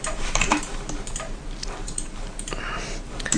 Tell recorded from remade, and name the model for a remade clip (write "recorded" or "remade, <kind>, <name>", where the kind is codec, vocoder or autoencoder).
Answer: remade, vocoder, BigVGAN v2